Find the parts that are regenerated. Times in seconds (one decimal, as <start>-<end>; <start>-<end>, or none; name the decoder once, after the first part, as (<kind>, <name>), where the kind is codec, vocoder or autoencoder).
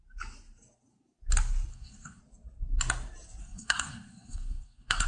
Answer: 1.7-2.2 (codec, SNAC); 3.4-5.1